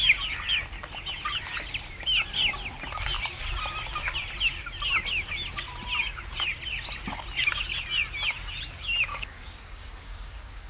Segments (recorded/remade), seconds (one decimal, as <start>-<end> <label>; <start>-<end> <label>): 0.0-9.1 recorded; 9.1-10.7 remade